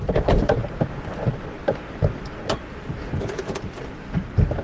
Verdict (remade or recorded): recorded